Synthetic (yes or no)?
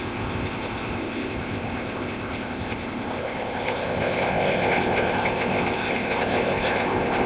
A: yes